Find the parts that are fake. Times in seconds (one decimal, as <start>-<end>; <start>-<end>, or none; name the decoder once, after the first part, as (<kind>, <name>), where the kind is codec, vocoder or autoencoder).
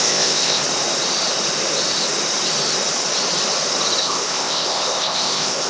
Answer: 0.0-0.6 (codec, ZipCodec); 4.0-5.7